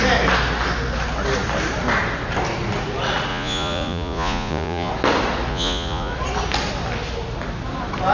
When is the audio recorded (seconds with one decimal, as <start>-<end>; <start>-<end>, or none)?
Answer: 0.0-3.3; 4.9-5.5; 6.1-8.1